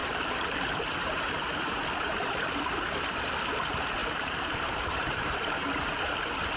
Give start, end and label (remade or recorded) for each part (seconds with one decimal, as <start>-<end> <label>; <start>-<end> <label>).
0.0-4.0 recorded; 4.0-5.5 remade; 5.5-6.6 recorded